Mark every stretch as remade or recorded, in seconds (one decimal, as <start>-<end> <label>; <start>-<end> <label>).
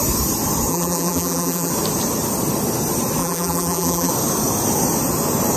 0.0-0.7 recorded; 0.7-1.7 remade; 1.7-3.2 recorded; 3.2-4.1 remade; 4.1-5.6 recorded